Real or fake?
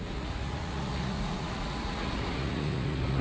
fake